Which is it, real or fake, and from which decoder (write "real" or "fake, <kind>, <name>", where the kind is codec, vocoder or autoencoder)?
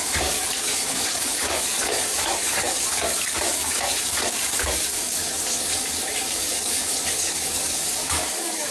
fake, codec, DAC